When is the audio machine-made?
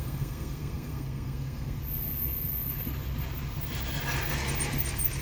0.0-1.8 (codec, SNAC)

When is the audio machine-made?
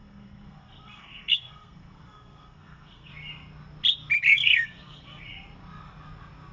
0.0-3.1 (codec, SNAC); 4.3-5.2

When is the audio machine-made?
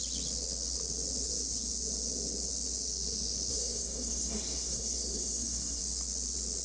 3.5-5.8 (codec, SNAC)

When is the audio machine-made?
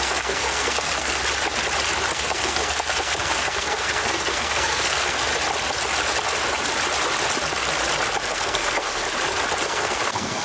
0.0-1.2 (codec, SNAC); 2.1-5.3; 8.3-9.0; 9.6-10.4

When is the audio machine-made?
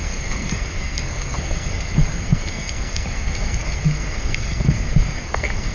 0.0-5.7 (codec, SNAC)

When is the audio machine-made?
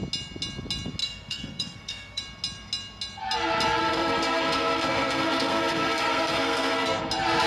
1.0-2.2 (codec, SNAC); 3.8-7.0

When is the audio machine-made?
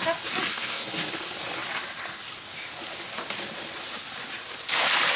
0.5-1.1 (codec, SNAC)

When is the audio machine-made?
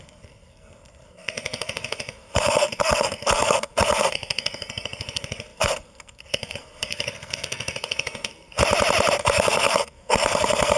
0.0-8.6 (codec, SNAC); 9.2-10.8